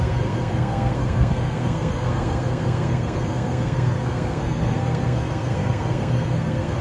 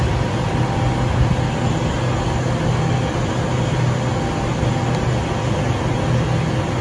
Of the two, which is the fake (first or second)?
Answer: first